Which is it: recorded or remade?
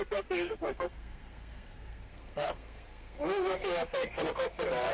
remade